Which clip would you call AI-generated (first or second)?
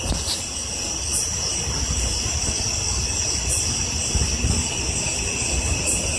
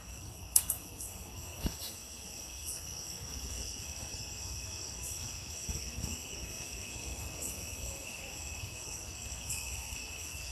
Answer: second